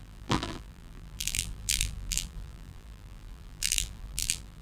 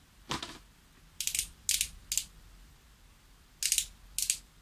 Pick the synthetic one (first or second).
first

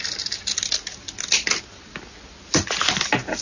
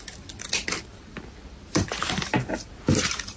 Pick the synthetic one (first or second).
second